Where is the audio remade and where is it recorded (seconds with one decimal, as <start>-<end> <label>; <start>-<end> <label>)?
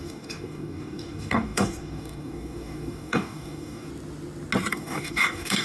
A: 0.0-3.9 remade; 3.9-4.7 recorded; 4.7-5.6 remade